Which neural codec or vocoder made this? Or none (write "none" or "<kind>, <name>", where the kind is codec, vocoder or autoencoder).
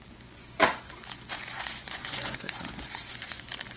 vocoder, Vocos